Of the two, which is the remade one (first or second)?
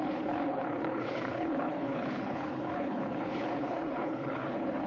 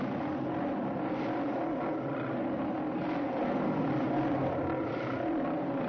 first